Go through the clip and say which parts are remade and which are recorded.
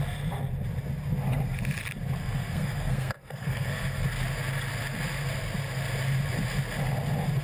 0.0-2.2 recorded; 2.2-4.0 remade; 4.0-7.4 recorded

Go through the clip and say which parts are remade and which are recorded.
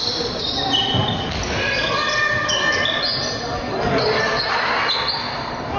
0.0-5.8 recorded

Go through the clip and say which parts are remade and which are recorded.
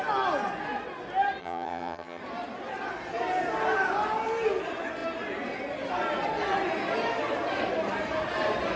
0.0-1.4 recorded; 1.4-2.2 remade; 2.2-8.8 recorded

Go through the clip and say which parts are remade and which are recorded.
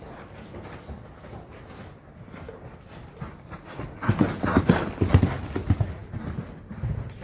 0.0-7.2 recorded